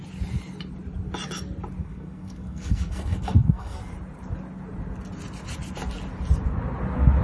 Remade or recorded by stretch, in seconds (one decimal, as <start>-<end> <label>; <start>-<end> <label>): 0.0-1.8 recorded; 1.8-3.8 remade; 3.8-7.2 recorded